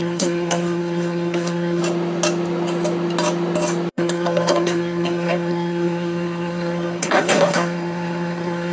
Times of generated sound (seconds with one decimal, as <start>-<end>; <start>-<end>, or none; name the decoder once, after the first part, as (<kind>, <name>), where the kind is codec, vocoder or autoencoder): 0.0-1.8 (codec, SNAC); 3.9-8.7